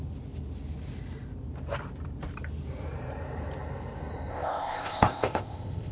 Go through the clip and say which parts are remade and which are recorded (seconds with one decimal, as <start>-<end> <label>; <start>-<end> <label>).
0.0-4.3 recorded; 4.3-5.9 remade